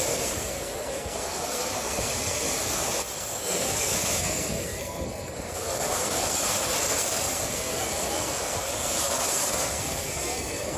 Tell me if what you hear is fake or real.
fake